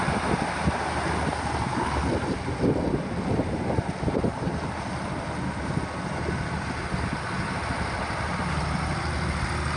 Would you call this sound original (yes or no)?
yes